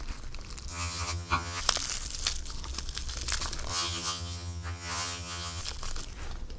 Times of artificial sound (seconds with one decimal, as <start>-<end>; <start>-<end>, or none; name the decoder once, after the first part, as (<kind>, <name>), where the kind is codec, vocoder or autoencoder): 0.7-1.6 (vocoder, HiFi-GAN); 3.7-5.6